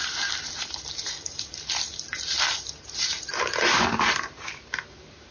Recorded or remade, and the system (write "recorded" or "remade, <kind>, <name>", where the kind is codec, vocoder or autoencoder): remade, vocoder, BigVGAN v2